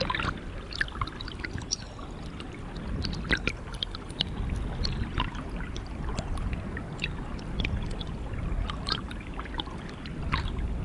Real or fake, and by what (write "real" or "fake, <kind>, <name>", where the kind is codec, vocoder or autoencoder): real